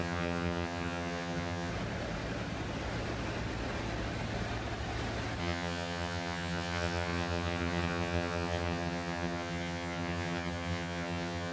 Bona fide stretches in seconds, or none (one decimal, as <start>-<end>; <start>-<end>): 1.7-5.4